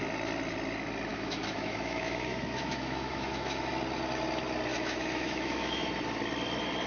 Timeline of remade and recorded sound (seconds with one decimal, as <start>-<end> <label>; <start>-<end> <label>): 0.0-1.1 recorded; 1.1-3.7 remade; 3.7-4.7 recorded; 4.7-5.9 remade; 5.9-6.9 recorded